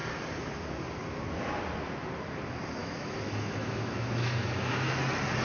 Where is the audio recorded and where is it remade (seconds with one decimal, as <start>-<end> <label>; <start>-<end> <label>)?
0.0-2.8 recorded; 2.8-5.0 remade; 5.0-5.4 recorded